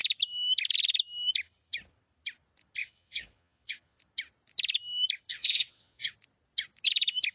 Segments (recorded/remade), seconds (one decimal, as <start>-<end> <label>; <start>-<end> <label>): 0.0-2.8 recorded; 2.8-4.0 remade; 4.0-5.3 recorded; 5.3-6.1 remade; 6.1-7.3 recorded